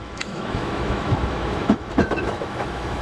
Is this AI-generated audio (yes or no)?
yes